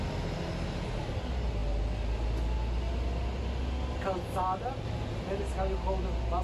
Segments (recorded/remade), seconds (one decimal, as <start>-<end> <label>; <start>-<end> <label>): 0.0-6.4 recorded